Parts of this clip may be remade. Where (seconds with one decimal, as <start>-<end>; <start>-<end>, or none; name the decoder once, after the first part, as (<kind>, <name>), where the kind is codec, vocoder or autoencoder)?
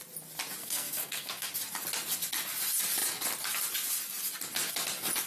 0.6-1.5 (codec, SNAC)